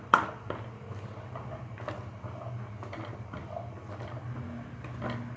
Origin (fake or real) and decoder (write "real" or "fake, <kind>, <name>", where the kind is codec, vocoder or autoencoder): real